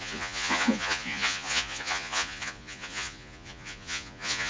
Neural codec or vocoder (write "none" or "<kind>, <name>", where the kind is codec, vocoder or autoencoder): vocoder, Vocos